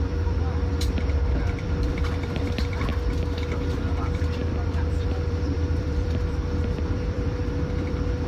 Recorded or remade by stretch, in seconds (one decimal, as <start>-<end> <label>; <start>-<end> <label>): 0.0-2.9 remade; 2.9-3.7 recorded; 3.7-8.3 remade